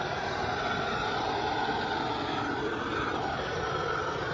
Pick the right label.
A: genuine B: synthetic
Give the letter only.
A